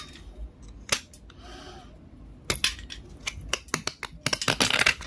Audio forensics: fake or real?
real